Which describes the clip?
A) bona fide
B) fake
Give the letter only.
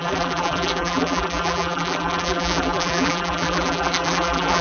B